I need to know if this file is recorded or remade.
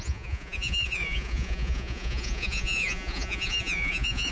remade